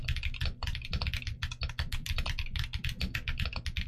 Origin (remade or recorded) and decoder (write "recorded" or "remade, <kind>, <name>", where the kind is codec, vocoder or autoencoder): recorded